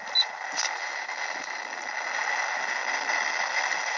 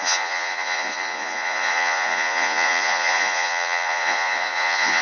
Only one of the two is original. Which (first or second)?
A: first